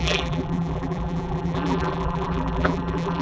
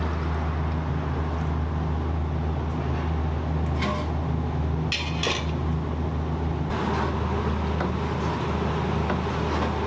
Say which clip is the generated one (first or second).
first